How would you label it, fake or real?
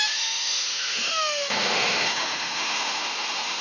fake